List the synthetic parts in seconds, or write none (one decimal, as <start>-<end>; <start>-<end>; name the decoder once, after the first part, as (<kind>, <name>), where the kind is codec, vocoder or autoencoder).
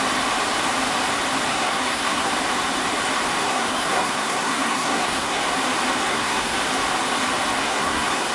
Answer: 1.5-2.3 (codec, SNAC); 3.4-5.4; 6.0-6.6; 7.6-8.3